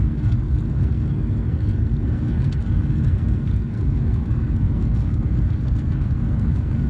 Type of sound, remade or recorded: remade